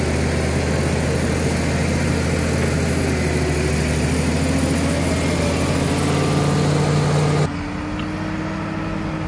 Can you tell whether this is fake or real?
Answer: real